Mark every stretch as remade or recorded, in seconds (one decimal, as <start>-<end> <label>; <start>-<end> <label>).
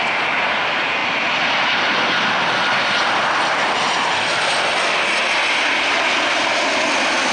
0.0-7.3 recorded